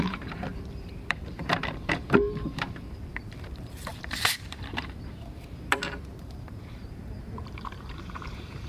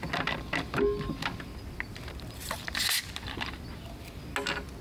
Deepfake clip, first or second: first